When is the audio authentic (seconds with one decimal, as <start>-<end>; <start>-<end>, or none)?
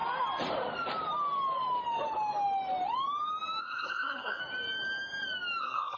0.0-3.6; 4.4-5.6